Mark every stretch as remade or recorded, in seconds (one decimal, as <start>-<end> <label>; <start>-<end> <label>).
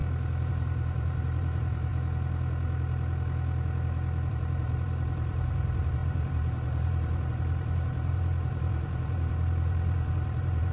0.0-0.5 recorded; 0.5-1.9 remade; 1.9-4.3 recorded; 4.3-10.7 remade